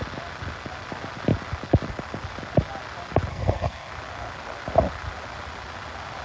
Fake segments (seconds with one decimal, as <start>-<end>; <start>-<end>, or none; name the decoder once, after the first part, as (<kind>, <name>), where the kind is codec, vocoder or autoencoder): 3.3-3.9 (codec, SNAC)